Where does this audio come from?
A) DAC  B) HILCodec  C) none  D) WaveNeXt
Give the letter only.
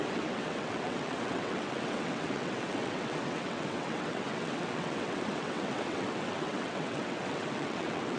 D